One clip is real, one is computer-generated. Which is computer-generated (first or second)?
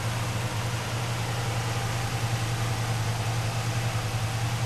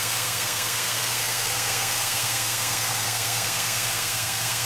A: second